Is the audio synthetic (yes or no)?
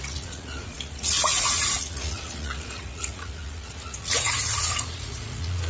yes